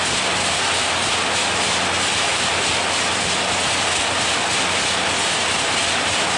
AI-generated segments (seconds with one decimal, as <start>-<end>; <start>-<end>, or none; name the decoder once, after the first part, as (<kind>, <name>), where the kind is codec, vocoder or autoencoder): 2.1-2.7 (vocoder, BigVGAN v2); 5.2-5.8